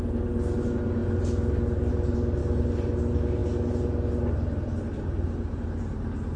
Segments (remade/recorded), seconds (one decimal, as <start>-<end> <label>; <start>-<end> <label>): 0.0-6.4 recorded